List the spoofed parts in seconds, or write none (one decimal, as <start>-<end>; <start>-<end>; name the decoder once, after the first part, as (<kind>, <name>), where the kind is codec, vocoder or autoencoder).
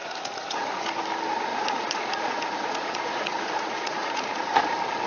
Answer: 0.0-1.0 (vocoder, Vocos); 1.5-4.6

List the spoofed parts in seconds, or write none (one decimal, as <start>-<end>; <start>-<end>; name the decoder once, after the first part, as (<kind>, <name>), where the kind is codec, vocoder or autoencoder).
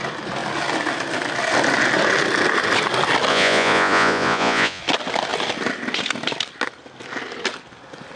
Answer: 3.3-4.8 (vocoder, Vocos)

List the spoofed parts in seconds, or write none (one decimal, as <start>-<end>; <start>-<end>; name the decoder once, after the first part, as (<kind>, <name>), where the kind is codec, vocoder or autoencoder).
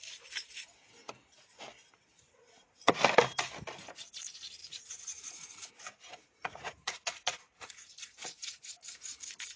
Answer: 2.4-2.9 (vocoder, Vocos); 4.6-9.2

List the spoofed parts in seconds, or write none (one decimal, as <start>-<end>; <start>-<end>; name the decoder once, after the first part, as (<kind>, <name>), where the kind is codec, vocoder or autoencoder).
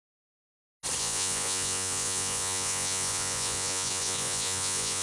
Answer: 1.0-5.0 (vocoder, Vocos)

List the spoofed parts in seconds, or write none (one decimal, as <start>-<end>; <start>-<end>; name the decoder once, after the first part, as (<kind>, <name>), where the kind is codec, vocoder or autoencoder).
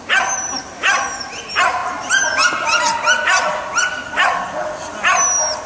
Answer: none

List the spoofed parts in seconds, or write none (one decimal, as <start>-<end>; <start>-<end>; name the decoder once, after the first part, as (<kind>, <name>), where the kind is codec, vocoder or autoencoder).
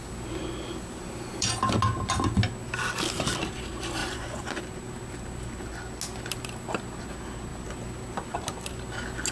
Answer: 4.0-4.6 (vocoder, Vocos)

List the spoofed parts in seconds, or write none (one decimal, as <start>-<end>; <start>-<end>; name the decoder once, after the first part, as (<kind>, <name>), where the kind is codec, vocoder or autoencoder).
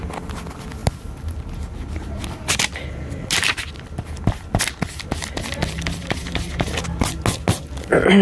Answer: none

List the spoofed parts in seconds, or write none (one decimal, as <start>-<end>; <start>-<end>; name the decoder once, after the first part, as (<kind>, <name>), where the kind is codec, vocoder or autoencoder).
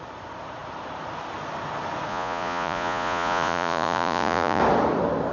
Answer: 2.1-4.6 (vocoder, Vocos)